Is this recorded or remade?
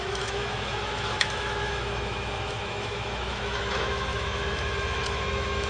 remade